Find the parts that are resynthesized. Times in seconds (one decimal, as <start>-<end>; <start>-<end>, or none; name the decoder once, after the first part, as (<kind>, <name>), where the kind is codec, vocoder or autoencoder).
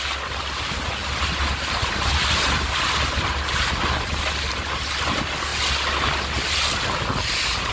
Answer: none